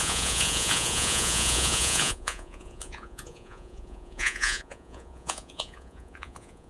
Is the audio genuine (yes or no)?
no